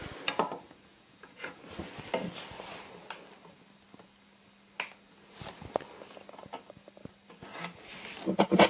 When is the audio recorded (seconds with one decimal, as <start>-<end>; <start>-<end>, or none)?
0.0-0.9; 1.6-8.7